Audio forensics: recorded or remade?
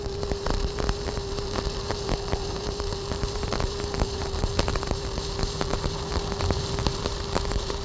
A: remade